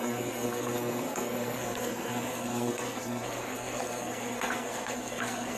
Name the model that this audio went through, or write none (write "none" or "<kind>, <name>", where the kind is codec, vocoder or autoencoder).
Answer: codec, SNAC